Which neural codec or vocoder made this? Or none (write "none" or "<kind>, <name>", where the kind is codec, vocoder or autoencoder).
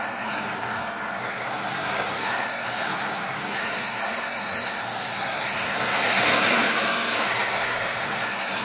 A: codec, SNAC